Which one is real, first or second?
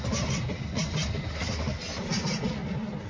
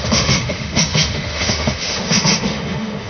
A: first